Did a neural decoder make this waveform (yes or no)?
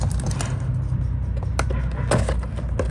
no